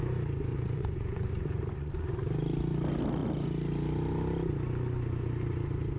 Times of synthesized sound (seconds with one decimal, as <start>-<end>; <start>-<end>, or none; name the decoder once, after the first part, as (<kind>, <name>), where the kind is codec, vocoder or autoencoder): 0.5-1.9 (vocoder, Vocos)

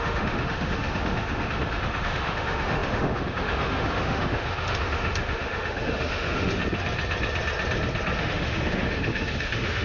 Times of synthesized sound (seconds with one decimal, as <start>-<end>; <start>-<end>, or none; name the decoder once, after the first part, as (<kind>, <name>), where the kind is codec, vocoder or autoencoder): 0.0-6.6 (autoencoder, DAC-VAE); 8.2-9.8

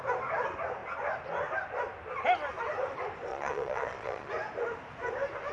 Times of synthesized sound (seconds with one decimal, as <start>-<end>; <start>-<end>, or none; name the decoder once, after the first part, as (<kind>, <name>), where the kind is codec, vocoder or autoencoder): 3.3-4.3 (vocoder, Vocos)

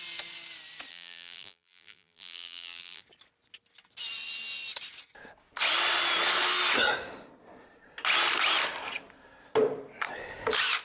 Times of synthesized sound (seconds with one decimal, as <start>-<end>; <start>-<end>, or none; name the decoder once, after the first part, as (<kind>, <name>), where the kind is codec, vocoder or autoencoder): 0.9-3.0 (vocoder, BigVGAN v2)

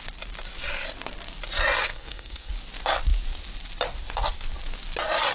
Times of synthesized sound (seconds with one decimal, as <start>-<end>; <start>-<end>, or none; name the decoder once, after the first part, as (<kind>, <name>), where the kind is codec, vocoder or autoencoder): 1.8-2.5 (codec, SNAC)

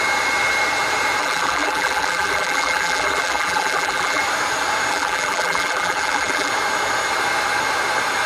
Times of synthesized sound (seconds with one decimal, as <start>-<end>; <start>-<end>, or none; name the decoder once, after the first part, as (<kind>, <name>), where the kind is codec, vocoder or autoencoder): 1.2-4.2 (vocoder, BigVGAN v2); 4.9-6.5

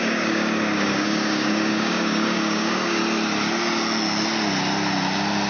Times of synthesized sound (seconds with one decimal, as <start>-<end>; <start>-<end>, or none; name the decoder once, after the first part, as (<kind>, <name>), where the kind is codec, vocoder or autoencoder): 0.0-3.0 (codec, DAC)

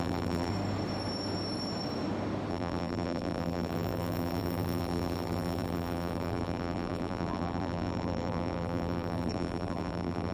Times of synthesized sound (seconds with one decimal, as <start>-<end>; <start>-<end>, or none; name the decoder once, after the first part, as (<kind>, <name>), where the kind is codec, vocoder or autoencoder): 0.0-0.5 (vocoder, BigVGAN v2); 2.5-10.3